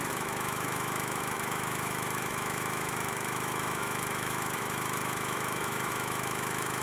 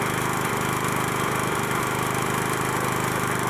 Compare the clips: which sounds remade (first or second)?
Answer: first